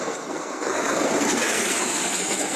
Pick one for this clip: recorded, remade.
remade